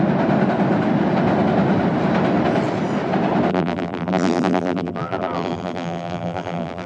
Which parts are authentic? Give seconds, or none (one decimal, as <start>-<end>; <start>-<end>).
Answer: 0.0-3.5